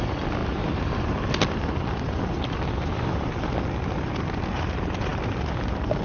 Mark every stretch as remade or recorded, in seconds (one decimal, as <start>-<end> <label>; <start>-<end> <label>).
0.0-6.0 recorded